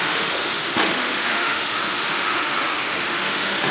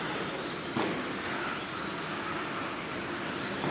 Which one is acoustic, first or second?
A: second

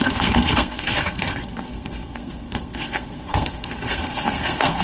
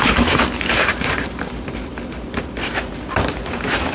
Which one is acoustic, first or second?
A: second